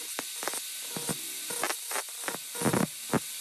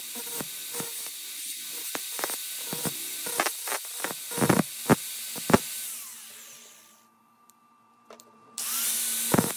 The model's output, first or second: second